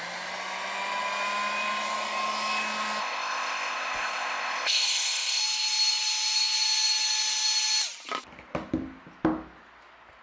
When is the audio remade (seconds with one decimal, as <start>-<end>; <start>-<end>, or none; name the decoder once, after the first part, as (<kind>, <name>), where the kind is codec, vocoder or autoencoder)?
3.0-5.4 (codec, ZipCodec)